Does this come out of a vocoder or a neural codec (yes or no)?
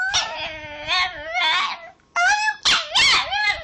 no